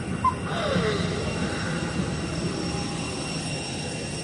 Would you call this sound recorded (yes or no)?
yes